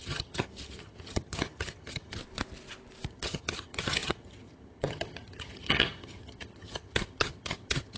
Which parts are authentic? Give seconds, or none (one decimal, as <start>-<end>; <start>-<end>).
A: 2.2-3.1